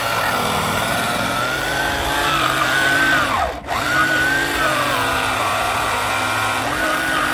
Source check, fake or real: fake